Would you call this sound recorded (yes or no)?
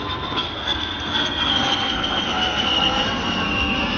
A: no